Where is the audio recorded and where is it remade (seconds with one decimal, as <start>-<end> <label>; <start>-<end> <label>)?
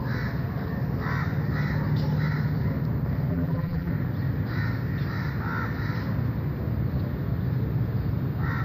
0.0-3.3 recorded; 3.3-3.9 remade; 3.9-8.6 recorded